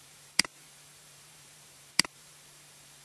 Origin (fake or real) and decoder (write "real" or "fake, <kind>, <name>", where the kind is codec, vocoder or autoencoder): fake, vocoder, BigVGAN v2